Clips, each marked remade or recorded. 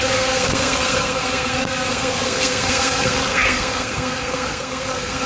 remade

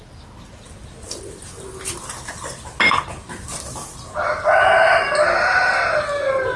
recorded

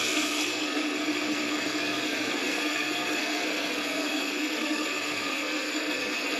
remade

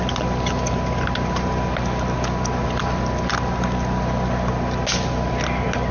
recorded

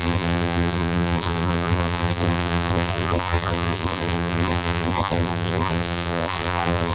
remade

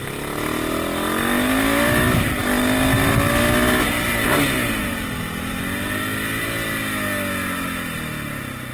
recorded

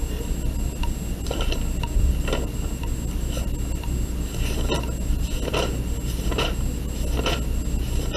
recorded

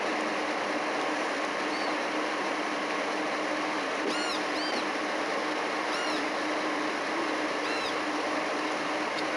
recorded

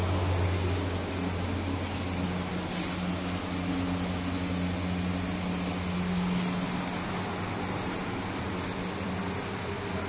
recorded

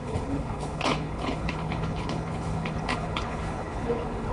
remade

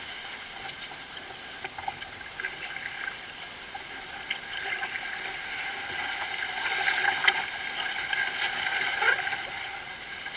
recorded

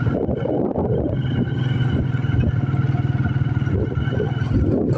recorded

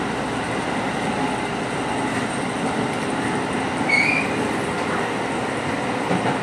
recorded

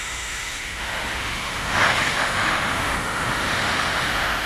remade